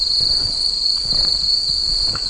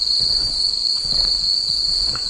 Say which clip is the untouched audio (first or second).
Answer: first